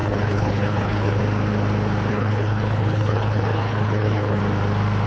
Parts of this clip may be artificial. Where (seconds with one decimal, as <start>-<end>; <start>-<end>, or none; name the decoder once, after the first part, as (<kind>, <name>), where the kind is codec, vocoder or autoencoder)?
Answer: 0.0-1.2 (codec, HILCodec); 2.1-4.4